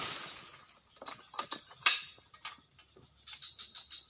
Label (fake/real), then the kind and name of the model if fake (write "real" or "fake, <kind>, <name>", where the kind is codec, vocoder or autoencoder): real